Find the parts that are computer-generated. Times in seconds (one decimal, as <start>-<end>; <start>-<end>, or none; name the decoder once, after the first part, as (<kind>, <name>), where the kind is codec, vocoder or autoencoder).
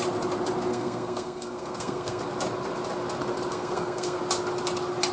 0.7-2.2 (codec, SNAC); 3.5-4.2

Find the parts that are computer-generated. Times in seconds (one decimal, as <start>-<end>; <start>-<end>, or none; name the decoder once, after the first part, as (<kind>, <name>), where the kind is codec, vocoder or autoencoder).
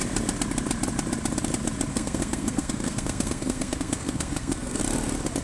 1.9-4.8 (codec, SNAC)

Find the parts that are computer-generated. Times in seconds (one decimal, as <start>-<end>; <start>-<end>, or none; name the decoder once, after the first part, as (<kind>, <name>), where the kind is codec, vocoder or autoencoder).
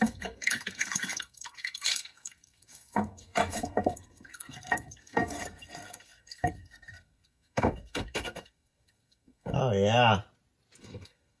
0.0-9.6 (codec, SNAC); 10.8-11.4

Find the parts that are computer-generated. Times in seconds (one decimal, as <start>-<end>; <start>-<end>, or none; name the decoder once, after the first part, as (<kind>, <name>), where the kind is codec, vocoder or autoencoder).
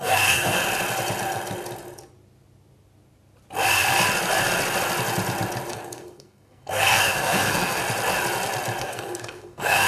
0.0-0.6 (codec, SNAC); 5.7-7.8; 8.8-9.9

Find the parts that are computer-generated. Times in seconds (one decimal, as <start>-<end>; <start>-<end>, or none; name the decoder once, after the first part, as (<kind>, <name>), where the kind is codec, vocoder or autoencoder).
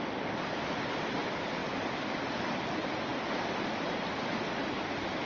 none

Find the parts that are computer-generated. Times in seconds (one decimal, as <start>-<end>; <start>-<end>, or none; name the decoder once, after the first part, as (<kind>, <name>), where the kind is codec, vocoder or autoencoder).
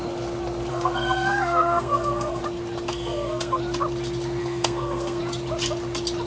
0.7-2.4 (codec, SNAC); 2.9-3.6; 4.4-5.2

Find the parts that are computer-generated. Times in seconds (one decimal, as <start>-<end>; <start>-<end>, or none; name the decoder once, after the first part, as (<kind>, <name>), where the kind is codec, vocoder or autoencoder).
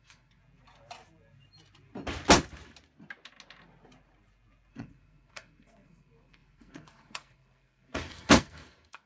0.0-0.4 (codec, SNAC); 4.7-9.1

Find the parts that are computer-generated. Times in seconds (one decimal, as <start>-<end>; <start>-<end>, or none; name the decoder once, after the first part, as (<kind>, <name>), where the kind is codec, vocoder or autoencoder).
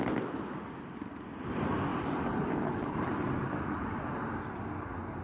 none